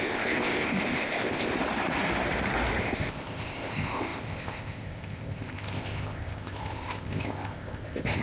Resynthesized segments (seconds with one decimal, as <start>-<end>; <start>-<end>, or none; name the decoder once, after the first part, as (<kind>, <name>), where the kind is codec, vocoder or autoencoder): 0.0-1.5 (codec, ZipCodec); 2.8-8.2